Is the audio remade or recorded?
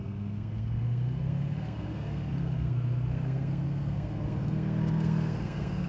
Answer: remade